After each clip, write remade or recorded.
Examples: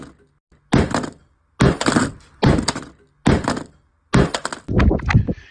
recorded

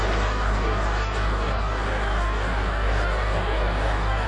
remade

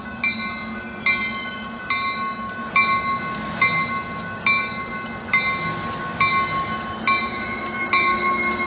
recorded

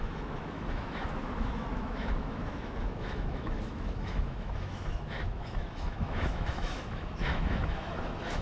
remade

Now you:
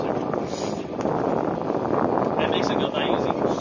recorded